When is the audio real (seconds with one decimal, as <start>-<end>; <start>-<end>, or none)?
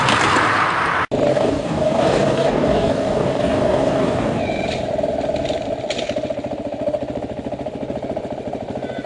0.0-1.3; 4.4-9.1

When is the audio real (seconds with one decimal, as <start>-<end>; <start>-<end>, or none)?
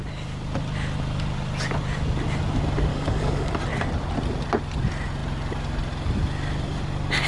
0.0-2.9; 3.5-7.3